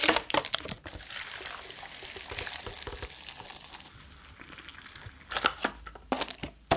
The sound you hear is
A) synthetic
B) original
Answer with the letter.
B